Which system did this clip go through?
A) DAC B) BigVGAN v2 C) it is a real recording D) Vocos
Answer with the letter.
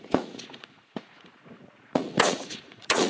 D